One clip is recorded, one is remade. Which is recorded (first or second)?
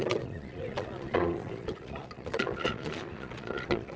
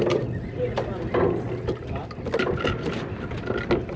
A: second